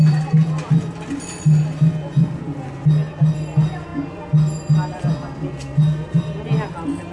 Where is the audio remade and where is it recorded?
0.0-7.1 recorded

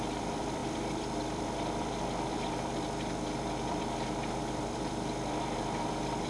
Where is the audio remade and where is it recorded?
0.0-6.3 remade